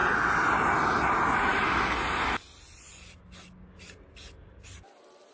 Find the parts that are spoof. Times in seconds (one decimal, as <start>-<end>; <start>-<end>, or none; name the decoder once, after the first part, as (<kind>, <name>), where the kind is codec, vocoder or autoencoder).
none